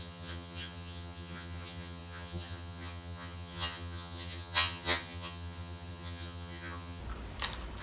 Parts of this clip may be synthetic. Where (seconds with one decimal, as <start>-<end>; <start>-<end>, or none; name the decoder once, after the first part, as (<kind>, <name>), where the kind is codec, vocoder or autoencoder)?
0.0-7.0 (vocoder, HiFi-GAN)